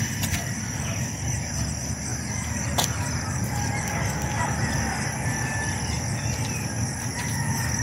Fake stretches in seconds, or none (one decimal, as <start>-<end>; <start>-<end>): none